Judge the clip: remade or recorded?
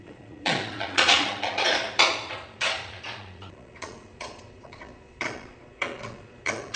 remade